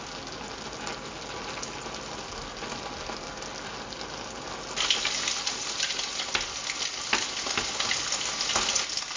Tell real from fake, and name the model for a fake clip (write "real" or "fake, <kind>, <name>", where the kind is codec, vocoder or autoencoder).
real